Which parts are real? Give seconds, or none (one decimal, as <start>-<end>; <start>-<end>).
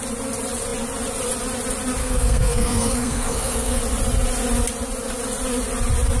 0.0-2.0; 3.8-6.2